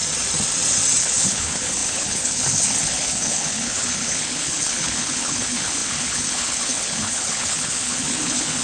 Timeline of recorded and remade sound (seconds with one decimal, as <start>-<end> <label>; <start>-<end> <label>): 0.0-1.0 recorded; 1.0-8.6 remade